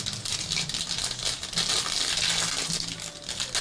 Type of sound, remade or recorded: recorded